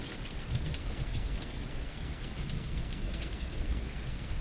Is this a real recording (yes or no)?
no